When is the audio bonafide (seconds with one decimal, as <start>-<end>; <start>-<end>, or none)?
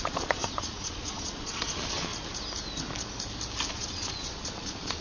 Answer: 2.1-3.7